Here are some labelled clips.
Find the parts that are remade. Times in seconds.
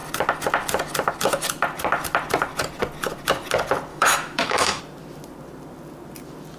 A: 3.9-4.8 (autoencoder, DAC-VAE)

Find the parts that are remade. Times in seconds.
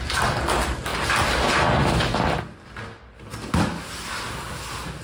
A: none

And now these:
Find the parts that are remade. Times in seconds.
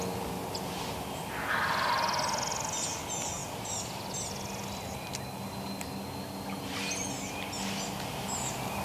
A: none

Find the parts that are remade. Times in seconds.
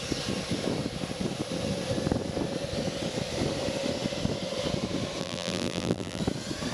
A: 5.2-6.2 (vocoder, BigVGAN v2)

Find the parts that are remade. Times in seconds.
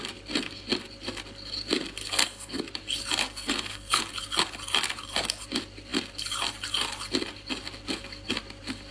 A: 2.0-2.6 (codec, SNAC); 3.2-4.0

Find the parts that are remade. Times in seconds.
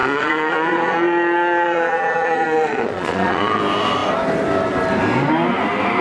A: 0.0-3.6 (vocoder, Vocos)